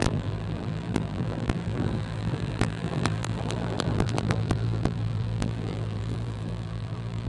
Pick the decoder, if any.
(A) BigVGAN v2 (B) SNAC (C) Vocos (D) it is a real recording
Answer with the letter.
A